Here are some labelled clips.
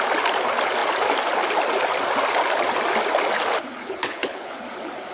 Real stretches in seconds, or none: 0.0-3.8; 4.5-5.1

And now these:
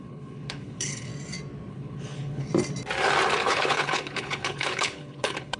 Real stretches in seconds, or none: 1.1-1.7; 2.5-3.4

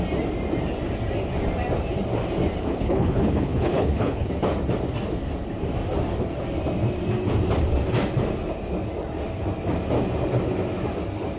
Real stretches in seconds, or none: 0.0-2.6; 4.3-11.4

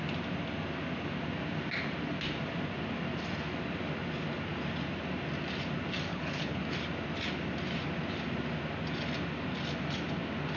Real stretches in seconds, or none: 0.0-6.1; 6.6-10.6

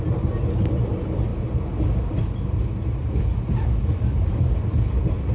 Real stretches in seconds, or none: 0.0-5.3

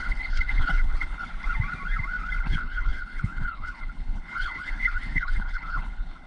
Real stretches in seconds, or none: 1.3-2.4

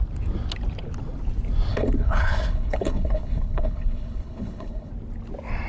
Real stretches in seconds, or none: 0.0-1.7; 4.9-5.7

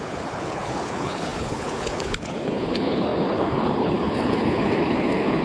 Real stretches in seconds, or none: none